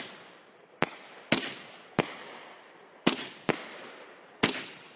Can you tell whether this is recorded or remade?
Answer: remade